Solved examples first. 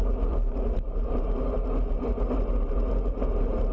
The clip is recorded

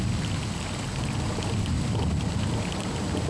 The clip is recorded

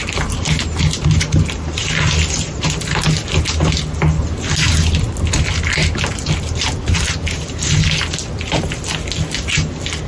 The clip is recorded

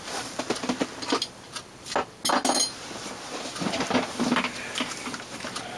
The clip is recorded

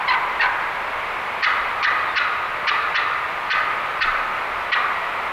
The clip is recorded